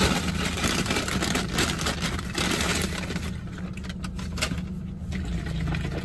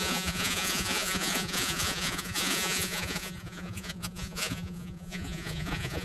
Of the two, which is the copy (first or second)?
second